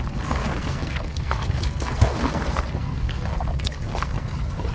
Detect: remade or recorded remade